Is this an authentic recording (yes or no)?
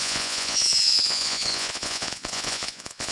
no